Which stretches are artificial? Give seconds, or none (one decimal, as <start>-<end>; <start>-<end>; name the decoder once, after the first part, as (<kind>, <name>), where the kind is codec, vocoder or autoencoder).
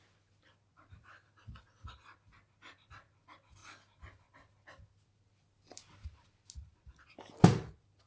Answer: none